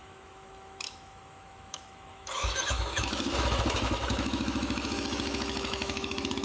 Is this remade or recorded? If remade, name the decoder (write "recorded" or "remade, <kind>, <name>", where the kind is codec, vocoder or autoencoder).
remade, autoencoder, DAC-VAE